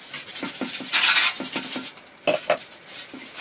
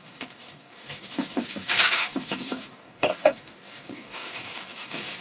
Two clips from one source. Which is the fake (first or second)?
second